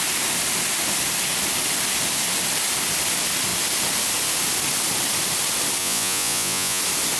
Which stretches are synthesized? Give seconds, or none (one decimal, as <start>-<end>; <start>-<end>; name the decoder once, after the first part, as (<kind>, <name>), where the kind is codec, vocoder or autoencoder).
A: 5.8-6.8 (vocoder, Vocos)